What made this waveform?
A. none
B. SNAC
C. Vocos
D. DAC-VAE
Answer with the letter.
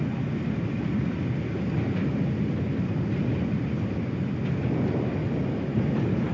A